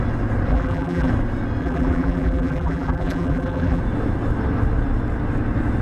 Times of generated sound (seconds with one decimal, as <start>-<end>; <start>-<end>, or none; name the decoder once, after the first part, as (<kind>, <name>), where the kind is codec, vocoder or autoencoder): 0.5-1.1 (vocoder, BigVGAN v2); 1.6-3.8

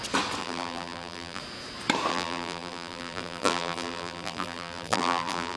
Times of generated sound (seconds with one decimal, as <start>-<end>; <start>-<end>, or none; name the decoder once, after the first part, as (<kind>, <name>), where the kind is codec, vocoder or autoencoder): 0.4-1.4 (vocoder, BigVGAN v2); 2.1-5.6